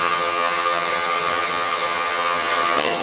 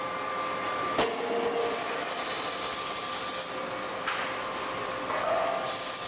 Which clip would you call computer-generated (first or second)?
first